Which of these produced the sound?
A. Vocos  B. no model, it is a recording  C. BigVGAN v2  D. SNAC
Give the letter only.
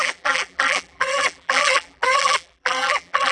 C